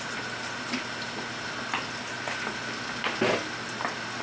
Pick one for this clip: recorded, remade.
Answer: recorded